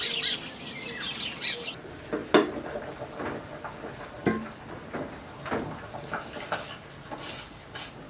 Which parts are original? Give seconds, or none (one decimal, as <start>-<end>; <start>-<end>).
0.0-8.1